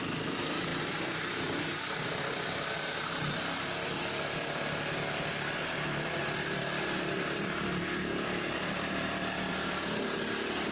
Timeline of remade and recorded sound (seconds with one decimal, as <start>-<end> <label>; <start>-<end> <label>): 0.0-10.7 remade